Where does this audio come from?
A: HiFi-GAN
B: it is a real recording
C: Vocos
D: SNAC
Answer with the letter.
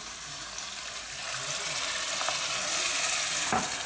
B